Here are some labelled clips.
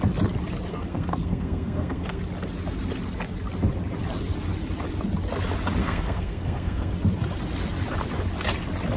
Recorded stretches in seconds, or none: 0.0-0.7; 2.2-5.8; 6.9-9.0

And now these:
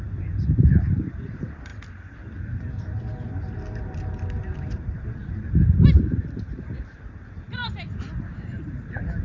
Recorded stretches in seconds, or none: 1.7-4.4; 7.6-8.2